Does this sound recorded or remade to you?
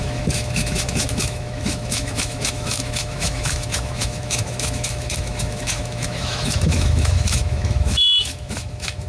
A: remade